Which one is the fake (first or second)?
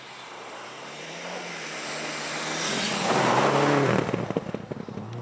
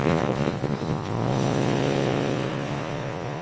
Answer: second